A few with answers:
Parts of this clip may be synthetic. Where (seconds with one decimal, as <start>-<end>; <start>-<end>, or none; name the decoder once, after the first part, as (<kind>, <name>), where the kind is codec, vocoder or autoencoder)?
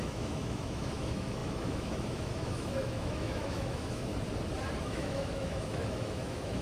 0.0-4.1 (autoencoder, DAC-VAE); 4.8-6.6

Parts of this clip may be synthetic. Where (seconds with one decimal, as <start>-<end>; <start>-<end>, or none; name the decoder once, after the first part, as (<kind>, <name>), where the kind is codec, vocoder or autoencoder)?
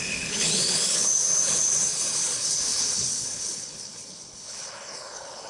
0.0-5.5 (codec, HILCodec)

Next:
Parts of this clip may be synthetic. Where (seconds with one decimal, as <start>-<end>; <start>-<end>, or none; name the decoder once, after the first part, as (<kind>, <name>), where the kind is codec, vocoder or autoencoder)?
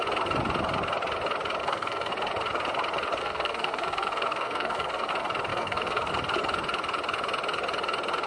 1.6-2.1 (codec, SNAC); 3.2-5.1; 5.5-6.1